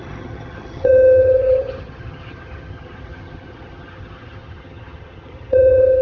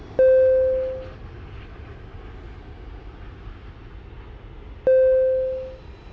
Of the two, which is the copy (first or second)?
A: first